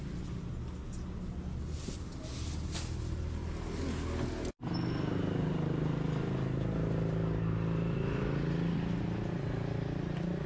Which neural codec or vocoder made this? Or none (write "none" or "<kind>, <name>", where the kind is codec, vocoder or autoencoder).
none